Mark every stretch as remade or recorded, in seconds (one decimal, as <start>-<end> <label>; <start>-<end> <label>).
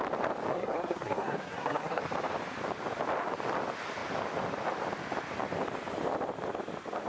0.0-0.5 recorded; 0.5-2.0 remade; 2.0-7.1 recorded